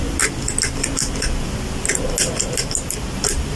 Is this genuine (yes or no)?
yes